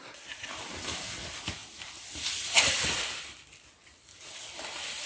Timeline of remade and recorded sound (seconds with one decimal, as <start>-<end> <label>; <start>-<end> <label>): 0.0-5.1 recorded

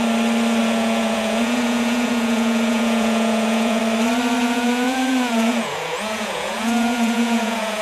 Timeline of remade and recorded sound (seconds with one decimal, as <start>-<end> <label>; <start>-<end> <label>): 0.0-0.6 recorded; 0.6-3.8 remade; 3.8-4.4 recorded; 4.4-7.8 remade

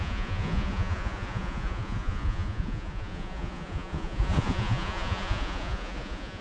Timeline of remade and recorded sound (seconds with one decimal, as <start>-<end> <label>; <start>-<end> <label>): 0.0-6.4 remade

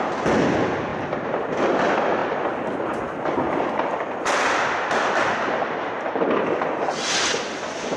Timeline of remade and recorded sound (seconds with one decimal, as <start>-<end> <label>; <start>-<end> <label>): 0.0-8.0 recorded